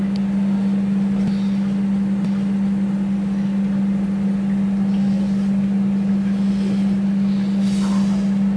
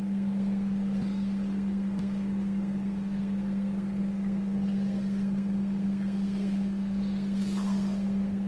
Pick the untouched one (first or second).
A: first